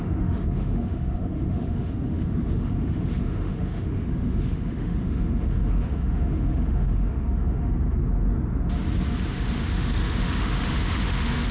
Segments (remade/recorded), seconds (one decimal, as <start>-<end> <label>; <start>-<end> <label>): 0.0-8.0 remade; 8.0-9.3 recorded; 9.3-11.5 remade